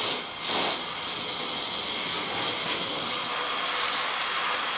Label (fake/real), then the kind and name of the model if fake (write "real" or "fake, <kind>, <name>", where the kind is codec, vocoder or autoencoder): real